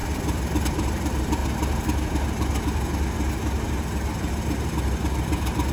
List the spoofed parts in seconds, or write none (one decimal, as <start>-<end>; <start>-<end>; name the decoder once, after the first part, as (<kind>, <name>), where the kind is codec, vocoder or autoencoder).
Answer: 0.0-1.4 (vocoder, BigVGAN v2); 3.8-5.7

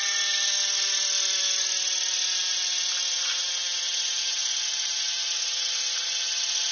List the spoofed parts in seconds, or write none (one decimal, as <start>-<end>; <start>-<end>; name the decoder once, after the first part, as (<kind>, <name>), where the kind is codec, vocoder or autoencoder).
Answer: none

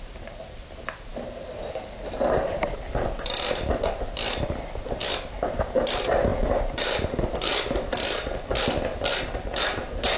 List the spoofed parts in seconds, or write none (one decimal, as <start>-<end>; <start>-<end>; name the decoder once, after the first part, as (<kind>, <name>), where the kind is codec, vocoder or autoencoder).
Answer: none

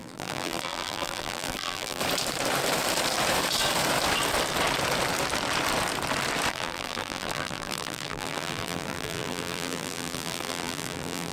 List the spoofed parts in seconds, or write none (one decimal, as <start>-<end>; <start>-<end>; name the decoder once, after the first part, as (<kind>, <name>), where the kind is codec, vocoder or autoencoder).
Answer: 0.0-2.0 (vocoder, BigVGAN v2); 6.5-11.3

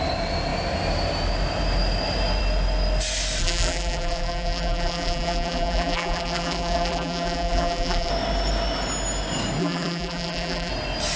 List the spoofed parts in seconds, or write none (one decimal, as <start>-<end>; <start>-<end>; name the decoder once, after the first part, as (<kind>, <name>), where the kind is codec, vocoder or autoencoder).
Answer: 3.4-8.1 (vocoder, BigVGAN v2); 9.6-10.7

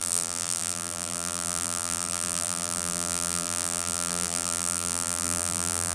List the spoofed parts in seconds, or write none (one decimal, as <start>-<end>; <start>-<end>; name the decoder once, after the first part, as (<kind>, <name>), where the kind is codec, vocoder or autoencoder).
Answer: 0.0-5.9 (vocoder, BigVGAN v2)

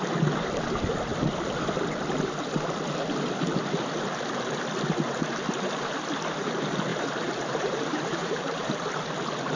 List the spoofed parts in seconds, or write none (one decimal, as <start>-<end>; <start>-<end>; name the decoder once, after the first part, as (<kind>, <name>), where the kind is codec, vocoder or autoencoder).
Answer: 6.9-8.7 (vocoder, BigVGAN v2)

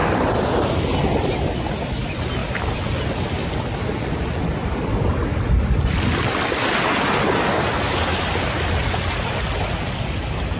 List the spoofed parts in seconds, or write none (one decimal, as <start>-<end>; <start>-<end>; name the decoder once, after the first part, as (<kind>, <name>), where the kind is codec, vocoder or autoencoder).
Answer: 2.4-3.2 (vocoder, BigVGAN v2)